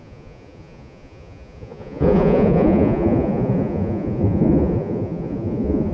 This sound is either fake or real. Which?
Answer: fake